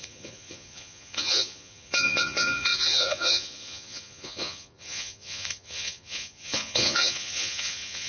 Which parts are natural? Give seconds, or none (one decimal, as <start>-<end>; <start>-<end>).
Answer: none